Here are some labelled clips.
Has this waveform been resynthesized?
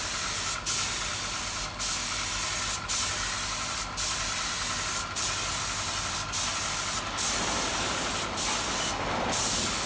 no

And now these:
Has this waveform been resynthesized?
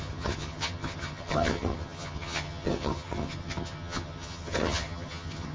yes